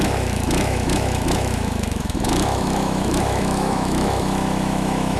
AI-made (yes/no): yes